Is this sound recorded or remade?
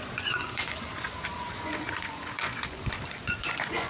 remade